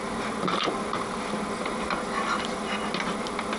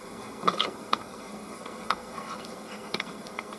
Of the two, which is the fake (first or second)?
second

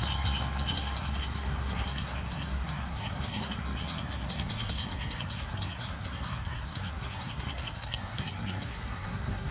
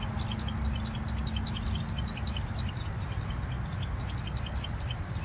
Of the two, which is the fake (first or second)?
first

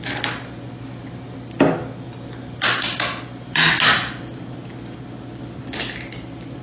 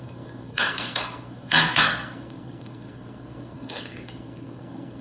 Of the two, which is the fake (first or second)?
second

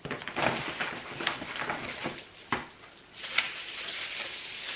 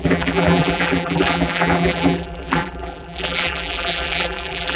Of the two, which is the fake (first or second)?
second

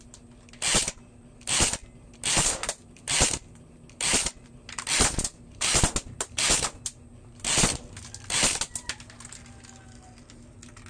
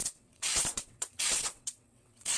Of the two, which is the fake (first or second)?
second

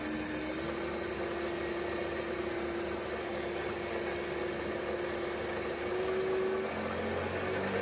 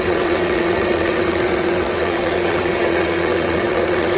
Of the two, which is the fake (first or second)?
second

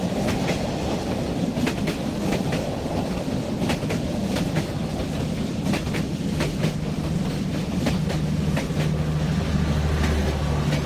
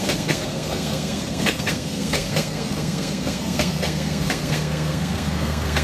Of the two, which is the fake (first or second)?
second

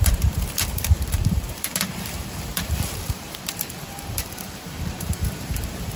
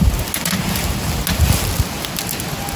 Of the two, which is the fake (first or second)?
first